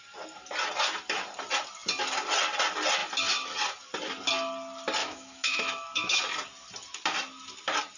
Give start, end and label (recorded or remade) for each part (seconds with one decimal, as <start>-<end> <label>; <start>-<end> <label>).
0.0-5.0 recorded; 5.0-6.2 remade; 6.2-8.0 recorded